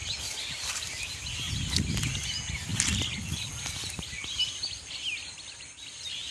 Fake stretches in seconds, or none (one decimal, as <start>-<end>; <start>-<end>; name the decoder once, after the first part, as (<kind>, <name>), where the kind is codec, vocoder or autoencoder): none